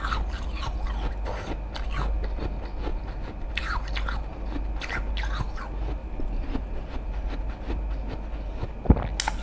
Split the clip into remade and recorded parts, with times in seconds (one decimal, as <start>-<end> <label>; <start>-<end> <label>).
0.0-2.9 recorded; 2.9-3.6 remade; 3.6-6.0 recorded; 6.0-7.4 remade; 7.4-9.4 recorded